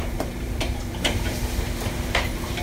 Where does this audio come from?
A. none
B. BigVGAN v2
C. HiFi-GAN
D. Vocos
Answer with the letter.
B